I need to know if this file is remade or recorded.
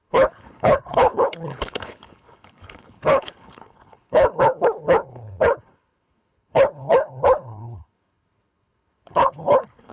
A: remade